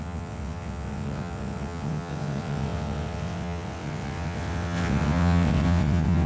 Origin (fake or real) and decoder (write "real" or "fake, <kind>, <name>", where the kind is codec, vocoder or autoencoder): fake, vocoder, WaveNeXt